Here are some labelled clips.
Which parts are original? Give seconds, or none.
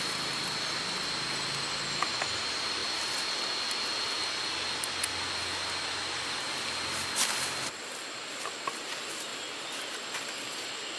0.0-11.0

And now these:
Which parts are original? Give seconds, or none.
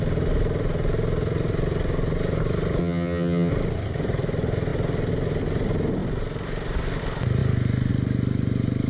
0.0-2.8; 3.5-8.9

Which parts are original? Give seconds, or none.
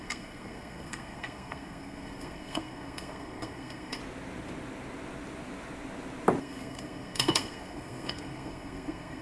4.0-6.4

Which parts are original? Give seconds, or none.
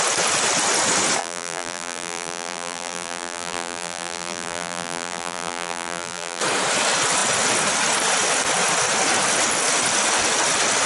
0.0-1.2; 6.4-10.9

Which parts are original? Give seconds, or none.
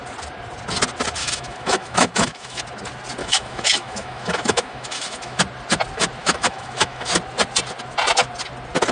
0.0-1.2; 2.6-3.2; 5.4-6.2; 7.1-8.9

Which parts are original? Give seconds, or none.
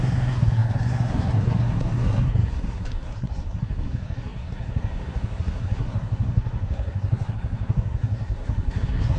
none